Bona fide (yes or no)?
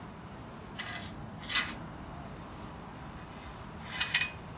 yes